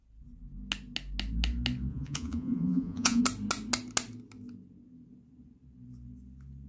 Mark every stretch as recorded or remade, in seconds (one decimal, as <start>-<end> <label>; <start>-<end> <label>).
0.0-1.9 recorded; 1.9-3.2 remade; 3.2-6.7 recorded